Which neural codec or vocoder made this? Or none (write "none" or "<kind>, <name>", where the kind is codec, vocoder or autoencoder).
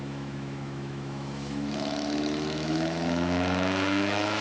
autoencoder, DAC-VAE